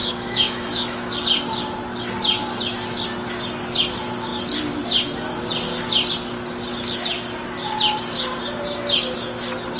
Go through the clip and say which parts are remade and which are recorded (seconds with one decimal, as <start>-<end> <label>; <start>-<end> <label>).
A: 0.0-1.2 remade; 1.2-9.8 recorded